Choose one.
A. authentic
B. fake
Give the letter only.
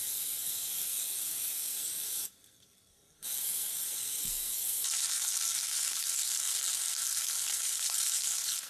B